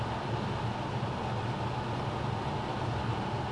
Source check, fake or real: real